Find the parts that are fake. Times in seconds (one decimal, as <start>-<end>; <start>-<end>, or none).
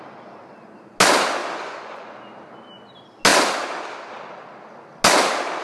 1.4-2.2